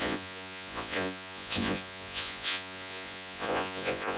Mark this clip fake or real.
fake